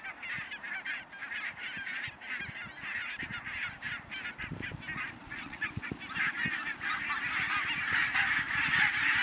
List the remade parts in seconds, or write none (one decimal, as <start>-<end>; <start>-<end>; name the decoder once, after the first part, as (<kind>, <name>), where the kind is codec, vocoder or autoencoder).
5.2-5.9 (vocoder, WaveNeXt)